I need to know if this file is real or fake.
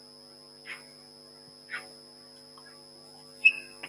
real